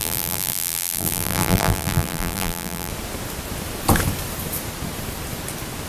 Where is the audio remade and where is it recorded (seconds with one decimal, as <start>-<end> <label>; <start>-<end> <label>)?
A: 0.0-2.9 remade; 2.9-5.9 recorded